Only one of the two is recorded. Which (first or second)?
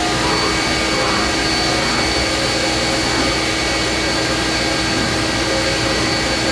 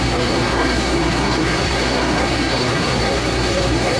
first